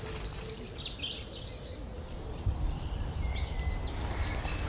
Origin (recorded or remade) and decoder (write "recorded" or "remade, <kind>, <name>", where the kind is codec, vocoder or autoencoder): recorded